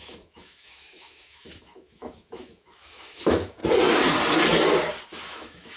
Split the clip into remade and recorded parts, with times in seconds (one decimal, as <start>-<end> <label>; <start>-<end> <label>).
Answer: 0.0-3.6 remade; 3.6-5.2 recorded; 5.2-5.8 remade

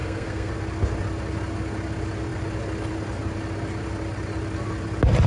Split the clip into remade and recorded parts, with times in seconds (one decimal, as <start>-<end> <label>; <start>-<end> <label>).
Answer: 0.0-0.5 remade; 0.5-5.3 recorded